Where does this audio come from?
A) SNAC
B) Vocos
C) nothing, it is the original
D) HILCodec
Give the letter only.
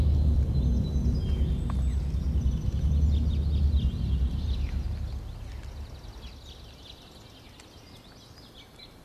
C